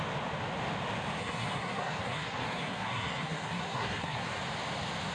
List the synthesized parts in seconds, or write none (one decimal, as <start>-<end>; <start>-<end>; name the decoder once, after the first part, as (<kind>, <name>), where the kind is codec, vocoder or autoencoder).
1.2-4.3 (codec, SNAC)